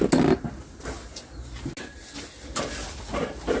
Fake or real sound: real